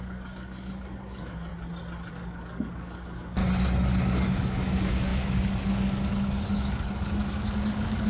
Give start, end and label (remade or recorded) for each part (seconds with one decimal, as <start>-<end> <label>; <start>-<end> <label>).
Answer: 0.0-1.5 remade; 1.5-2.1 recorded; 2.1-3.4 remade; 3.4-4.0 recorded; 4.0-8.1 remade